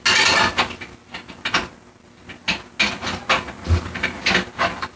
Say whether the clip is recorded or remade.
recorded